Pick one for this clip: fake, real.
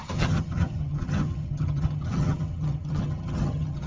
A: fake